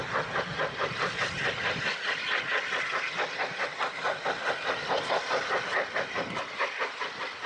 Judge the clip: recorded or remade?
recorded